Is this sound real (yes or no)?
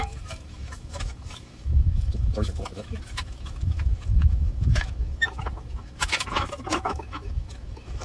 no